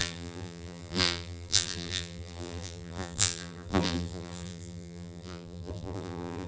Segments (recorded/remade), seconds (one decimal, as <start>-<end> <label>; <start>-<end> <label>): 0.0-6.5 remade